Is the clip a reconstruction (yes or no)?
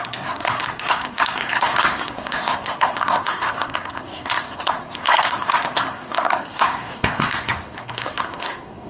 yes